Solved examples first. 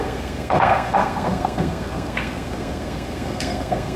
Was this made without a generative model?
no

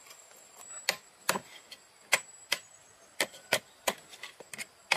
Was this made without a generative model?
yes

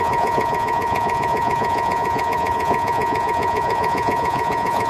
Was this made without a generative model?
no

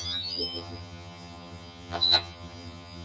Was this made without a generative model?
no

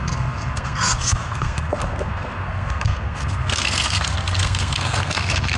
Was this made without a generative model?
no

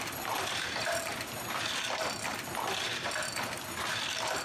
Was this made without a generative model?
no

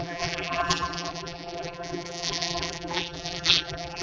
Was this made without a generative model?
no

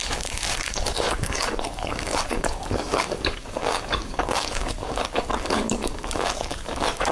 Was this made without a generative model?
no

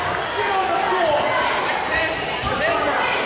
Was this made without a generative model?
yes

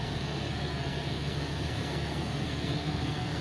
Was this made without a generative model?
no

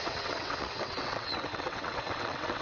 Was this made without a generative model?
no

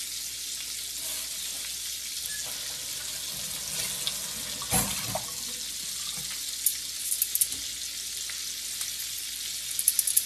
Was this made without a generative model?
yes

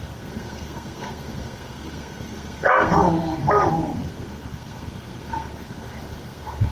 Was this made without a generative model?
no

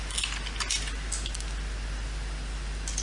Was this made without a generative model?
yes